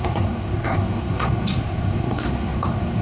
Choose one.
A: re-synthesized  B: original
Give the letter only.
A